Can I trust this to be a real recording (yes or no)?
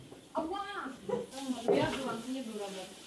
no